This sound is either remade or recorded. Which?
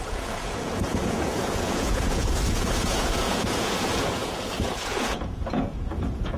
remade